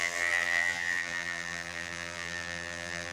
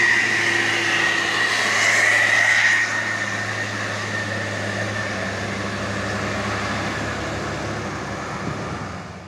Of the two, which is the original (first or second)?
second